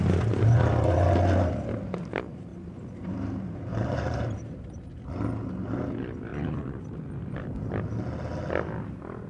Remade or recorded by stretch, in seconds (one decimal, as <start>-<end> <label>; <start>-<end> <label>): 0.0-2.5 recorded; 2.5-4.8 remade; 4.8-6.3 recorded; 6.3-6.8 remade; 6.8-9.3 recorded